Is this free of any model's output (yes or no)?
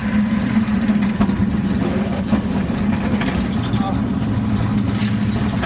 yes